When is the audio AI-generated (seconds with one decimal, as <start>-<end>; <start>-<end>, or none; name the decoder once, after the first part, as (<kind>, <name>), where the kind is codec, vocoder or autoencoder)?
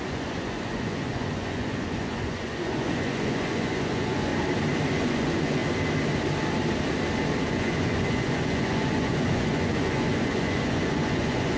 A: 0.0-4.3 (vocoder, Vocos); 4.9-5.6; 7.5-11.6